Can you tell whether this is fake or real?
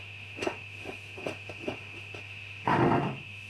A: fake